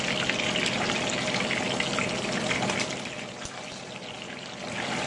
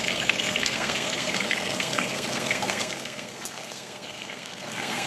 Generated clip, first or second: second